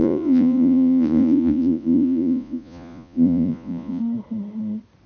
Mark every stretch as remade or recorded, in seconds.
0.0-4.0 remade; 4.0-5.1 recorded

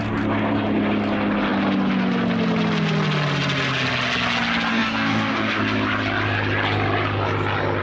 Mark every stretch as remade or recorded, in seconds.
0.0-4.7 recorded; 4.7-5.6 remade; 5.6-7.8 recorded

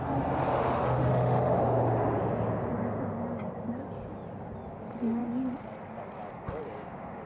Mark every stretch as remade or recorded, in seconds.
0.0-0.5 recorded; 0.5-1.6 remade; 1.6-7.3 recorded

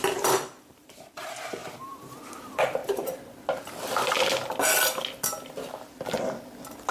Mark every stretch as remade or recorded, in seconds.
0.0-2.8 remade; 2.8-6.9 recorded